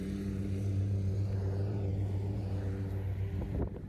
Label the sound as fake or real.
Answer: fake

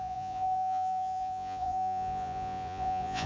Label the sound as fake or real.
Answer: fake